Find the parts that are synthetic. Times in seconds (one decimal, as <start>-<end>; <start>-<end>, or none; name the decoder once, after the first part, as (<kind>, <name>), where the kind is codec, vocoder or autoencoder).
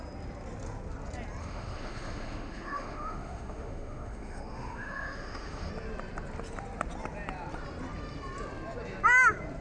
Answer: 1.4-5.7 (autoencoder, DAC-VAE)